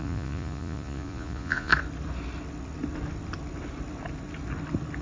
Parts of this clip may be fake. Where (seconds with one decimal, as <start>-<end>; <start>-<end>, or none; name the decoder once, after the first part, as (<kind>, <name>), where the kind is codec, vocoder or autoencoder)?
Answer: 0.0-1.7 (vocoder, Vocos)